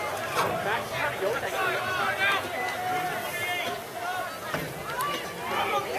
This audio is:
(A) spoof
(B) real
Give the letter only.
B